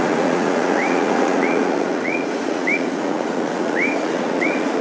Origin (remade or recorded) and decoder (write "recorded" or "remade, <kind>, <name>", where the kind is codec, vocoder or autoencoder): remade, vocoder, Vocos